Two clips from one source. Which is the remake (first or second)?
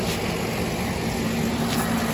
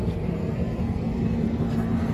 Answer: second